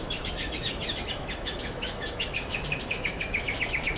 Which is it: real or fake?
fake